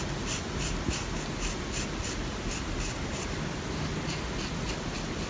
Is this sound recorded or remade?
recorded